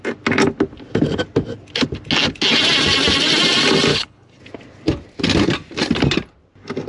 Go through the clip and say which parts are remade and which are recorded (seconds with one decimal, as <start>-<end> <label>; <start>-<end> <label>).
0.0-3.9 recorded; 3.9-4.4 remade; 4.4-6.9 recorded